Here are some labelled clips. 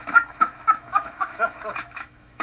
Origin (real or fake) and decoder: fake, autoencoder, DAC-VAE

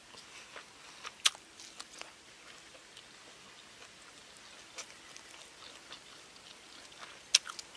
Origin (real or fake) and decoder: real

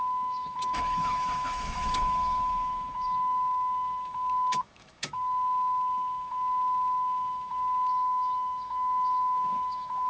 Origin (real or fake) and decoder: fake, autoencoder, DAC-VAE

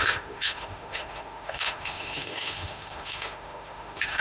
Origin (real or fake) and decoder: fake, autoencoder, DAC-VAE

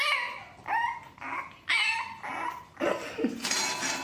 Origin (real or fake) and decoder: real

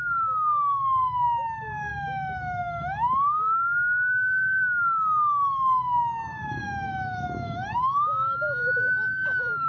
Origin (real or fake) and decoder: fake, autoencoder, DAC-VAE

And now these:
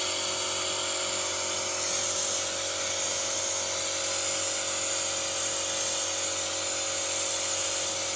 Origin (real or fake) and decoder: real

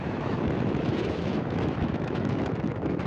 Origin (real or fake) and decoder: fake, autoencoder, DAC-VAE